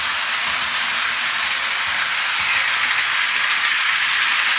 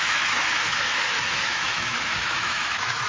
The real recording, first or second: first